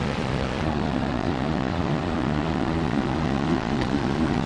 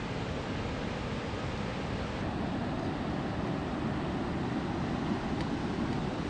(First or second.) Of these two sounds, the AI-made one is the first